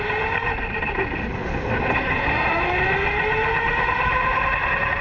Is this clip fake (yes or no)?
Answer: no